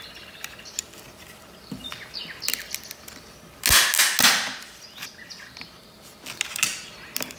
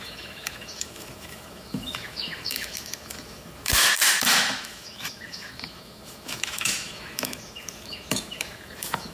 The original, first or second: first